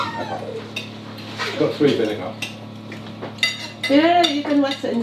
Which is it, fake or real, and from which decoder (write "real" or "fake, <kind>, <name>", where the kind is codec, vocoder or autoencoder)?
real